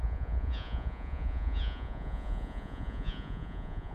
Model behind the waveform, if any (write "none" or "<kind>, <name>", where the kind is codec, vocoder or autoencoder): vocoder, Vocos